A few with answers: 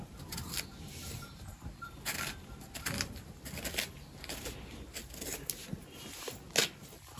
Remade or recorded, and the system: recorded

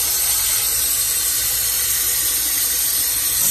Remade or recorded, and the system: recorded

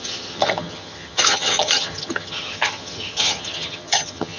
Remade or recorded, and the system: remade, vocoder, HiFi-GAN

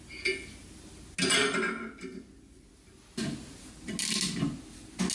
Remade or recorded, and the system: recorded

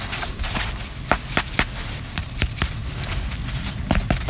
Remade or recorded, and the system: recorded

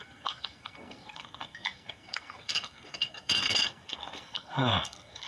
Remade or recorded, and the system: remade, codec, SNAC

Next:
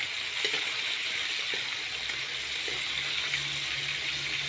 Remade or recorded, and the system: recorded